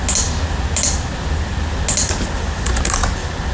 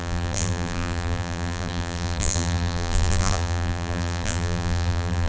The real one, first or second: first